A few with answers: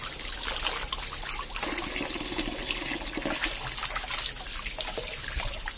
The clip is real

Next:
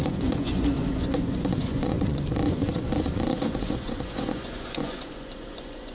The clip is fake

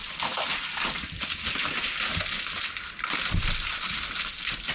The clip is real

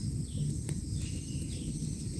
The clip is real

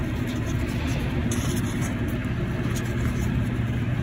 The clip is real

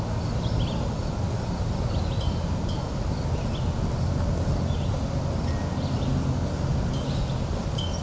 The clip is real